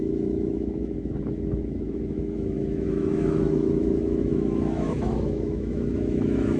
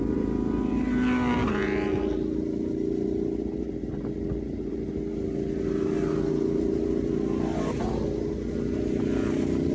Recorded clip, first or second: second